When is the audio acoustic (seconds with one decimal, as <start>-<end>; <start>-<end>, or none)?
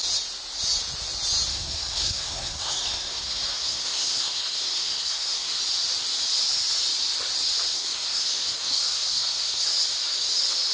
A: 0.0-1.5; 5.6-7.7; 9.7-10.7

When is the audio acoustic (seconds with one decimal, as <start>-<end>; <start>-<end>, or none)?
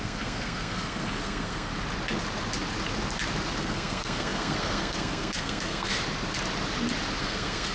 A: 1.7-3.6; 5.9-7.2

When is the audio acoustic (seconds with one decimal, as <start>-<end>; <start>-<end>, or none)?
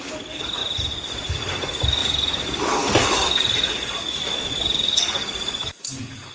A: 0.6-1.3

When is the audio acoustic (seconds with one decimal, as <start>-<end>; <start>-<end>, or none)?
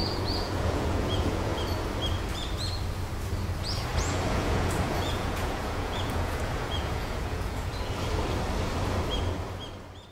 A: 1.6-3.9; 7.7-10.1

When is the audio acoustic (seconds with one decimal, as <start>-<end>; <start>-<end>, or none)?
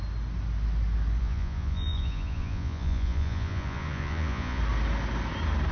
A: 0.0-1.2; 4.6-5.7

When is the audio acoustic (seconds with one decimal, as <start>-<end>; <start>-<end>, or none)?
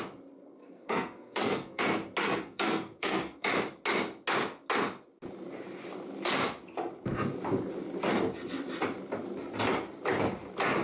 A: 0.0-0.6; 1.8-2.2; 3.5-10.8